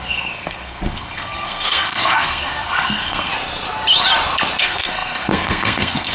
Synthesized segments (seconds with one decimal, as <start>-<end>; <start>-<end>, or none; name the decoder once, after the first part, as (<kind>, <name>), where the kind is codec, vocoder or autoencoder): 0.0-3.3 (codec, SNAC); 4.6-6.1